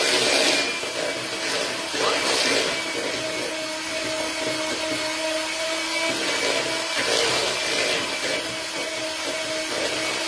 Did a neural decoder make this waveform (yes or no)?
no